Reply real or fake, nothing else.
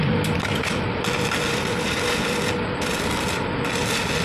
real